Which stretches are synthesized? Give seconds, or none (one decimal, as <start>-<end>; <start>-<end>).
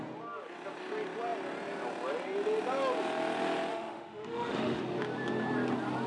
3.7-4.8